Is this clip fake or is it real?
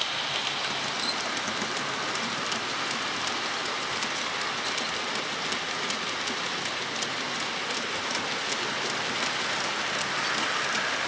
real